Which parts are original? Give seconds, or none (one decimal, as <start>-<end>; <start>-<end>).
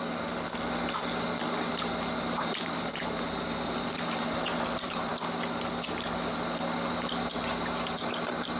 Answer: 0.0-1.7; 5.1-8.6